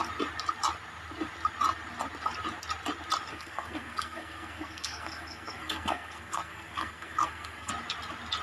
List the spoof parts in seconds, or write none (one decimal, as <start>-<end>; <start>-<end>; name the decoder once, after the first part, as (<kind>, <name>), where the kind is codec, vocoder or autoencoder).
3.3-7.7 (codec, SNAC)